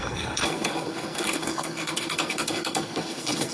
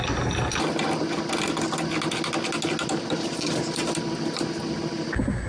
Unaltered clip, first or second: second